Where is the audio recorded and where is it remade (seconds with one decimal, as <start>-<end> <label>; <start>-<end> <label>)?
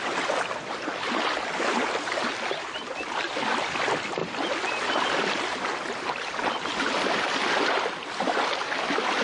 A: 0.0-9.2 recorded